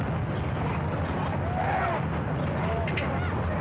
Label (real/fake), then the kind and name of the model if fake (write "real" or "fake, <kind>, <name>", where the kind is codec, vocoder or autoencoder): real